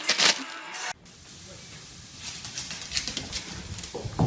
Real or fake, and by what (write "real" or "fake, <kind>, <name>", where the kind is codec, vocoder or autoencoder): real